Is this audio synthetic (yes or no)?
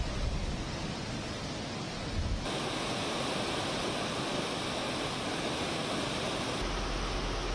no